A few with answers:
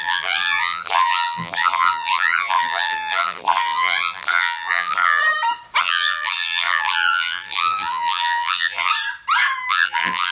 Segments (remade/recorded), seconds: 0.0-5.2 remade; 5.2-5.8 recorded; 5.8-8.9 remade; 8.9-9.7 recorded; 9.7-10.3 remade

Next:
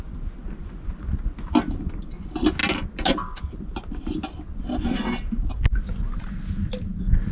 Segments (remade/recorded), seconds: 0.0-7.3 recorded

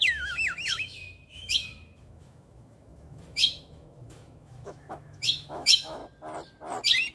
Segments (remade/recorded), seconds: 0.0-6.0 remade; 6.0-7.1 recorded